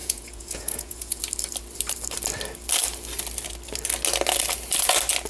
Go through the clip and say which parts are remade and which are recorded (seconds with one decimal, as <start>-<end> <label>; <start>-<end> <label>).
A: 0.0-1.2 remade; 1.2-5.3 recorded